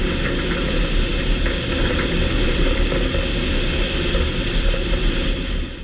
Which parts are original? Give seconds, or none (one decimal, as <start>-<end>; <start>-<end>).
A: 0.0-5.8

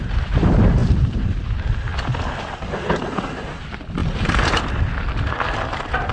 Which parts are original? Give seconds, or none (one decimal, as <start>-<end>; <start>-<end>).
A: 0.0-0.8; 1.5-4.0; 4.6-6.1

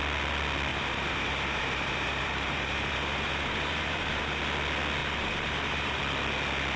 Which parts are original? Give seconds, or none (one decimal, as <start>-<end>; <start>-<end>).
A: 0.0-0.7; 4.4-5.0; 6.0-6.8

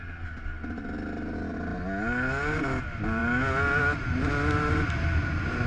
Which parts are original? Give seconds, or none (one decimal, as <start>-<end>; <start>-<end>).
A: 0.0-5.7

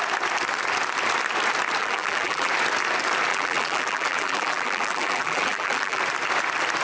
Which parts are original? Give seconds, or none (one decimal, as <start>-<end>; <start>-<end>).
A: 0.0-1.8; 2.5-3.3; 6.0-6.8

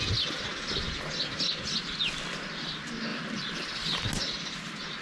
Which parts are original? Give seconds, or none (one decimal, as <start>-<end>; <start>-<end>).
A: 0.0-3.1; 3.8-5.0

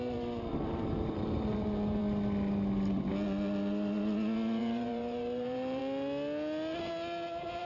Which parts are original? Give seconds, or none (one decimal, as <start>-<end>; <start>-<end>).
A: 2.0-4.6; 5.8-7.6